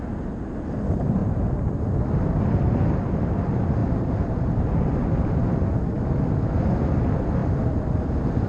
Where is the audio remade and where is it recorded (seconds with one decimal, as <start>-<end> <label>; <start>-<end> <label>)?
0.0-3.8 recorded; 3.8-4.9 remade; 4.9-7.4 recorded; 7.4-8.0 remade; 8.0-8.5 recorded